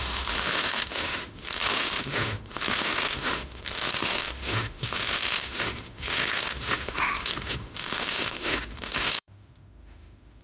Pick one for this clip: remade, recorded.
remade